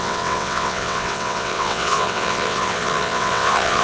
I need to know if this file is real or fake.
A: fake